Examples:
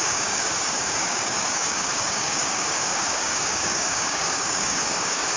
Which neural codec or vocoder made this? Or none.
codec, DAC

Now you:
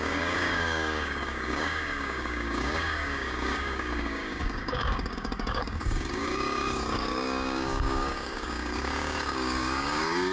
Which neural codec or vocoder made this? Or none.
codec, DAC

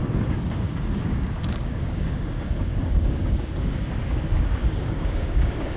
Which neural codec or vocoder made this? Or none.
codec, DAC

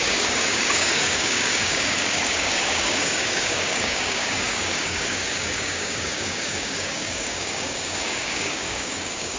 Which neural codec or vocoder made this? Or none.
codec, DAC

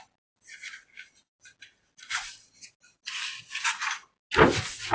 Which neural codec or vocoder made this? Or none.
none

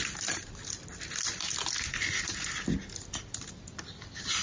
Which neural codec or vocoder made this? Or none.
none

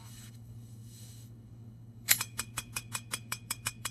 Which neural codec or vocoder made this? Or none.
codec, DAC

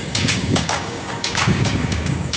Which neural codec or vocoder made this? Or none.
codec, DAC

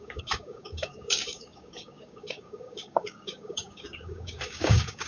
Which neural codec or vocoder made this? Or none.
codec, DAC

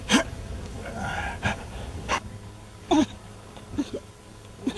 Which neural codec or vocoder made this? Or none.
codec, DAC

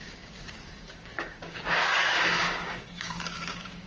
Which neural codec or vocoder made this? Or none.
codec, DAC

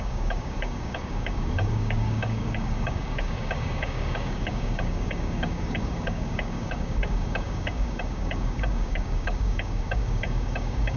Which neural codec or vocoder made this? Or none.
codec, DAC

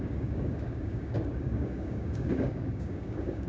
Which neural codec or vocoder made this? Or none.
codec, DAC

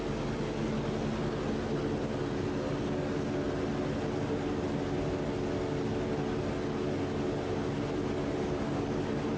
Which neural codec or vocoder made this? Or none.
none